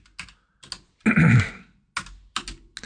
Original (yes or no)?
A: yes